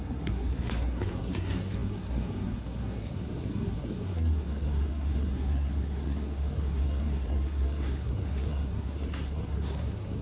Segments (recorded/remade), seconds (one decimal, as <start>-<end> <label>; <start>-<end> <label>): 0.0-10.2 remade

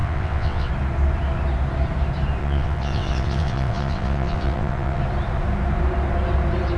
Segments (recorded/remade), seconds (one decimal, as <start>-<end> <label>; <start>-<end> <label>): 0.0-0.7 remade; 0.7-2.4 recorded; 2.4-5.0 remade; 5.0-6.8 recorded

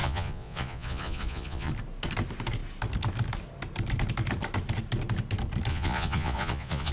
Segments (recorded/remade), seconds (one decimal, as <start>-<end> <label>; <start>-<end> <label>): 0.0-1.7 remade; 1.7-5.7 recorded; 5.7-6.9 remade